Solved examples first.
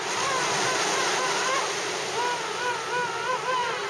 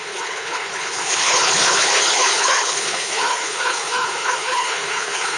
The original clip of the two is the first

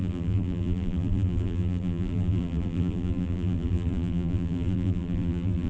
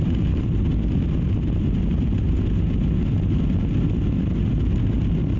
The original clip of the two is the second